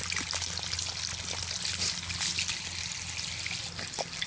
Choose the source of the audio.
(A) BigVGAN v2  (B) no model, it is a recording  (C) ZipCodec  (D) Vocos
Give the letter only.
B